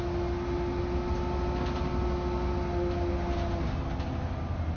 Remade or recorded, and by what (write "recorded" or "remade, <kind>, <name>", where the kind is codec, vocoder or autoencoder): recorded